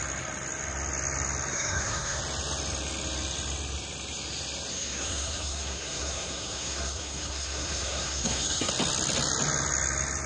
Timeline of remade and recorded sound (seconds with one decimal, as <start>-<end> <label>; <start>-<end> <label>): 0.0-1.5 recorded; 1.5-2.2 remade; 2.2-4.7 recorded; 4.7-8.7 remade; 8.7-10.3 recorded